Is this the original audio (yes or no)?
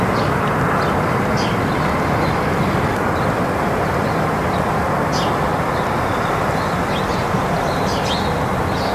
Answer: yes